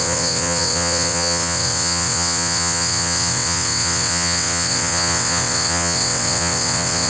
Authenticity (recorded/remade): remade